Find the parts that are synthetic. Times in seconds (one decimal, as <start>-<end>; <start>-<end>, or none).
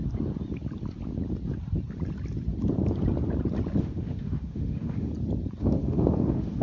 3.8-5.1; 5.6-6.6